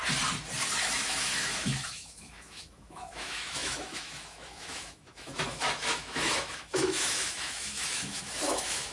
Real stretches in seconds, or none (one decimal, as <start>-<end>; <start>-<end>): 0.0-0.8

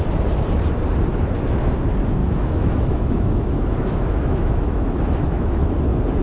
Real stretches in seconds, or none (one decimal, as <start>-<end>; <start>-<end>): 0.0-2.2; 5.6-6.2

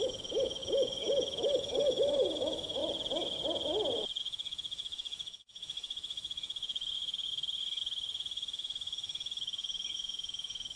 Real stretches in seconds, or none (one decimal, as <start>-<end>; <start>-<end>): 2.8-4.2

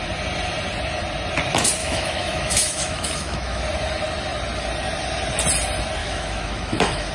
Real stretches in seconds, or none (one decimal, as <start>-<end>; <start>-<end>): 0.0-1.8; 3.6-6.0